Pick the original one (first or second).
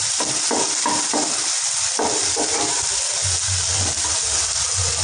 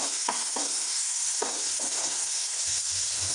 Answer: first